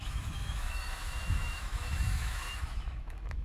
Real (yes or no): no